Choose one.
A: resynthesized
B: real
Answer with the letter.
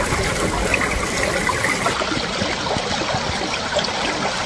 B